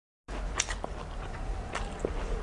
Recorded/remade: recorded